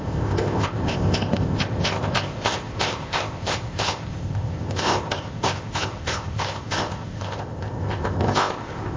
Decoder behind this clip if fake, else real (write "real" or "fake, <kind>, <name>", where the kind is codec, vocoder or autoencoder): fake, codec, ZipCodec